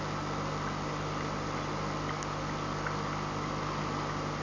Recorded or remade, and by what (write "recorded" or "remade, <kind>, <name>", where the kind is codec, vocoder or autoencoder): recorded